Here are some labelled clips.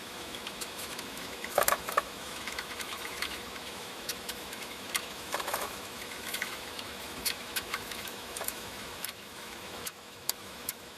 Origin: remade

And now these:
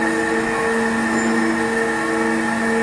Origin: recorded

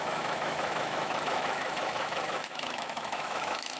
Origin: remade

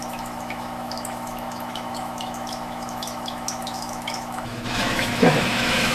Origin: remade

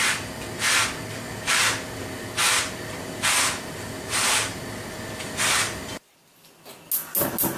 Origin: recorded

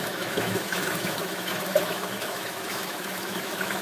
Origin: remade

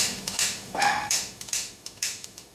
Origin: remade